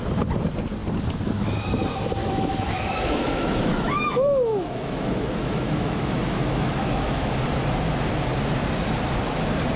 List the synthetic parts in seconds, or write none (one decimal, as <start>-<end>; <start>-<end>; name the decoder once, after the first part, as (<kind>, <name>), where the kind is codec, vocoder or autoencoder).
2.2-7.3 (autoencoder, DAC-VAE)